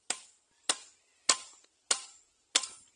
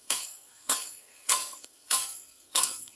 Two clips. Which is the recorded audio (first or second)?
first